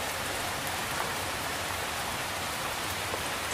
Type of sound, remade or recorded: remade